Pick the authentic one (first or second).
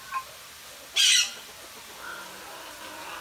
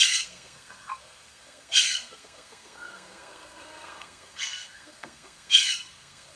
first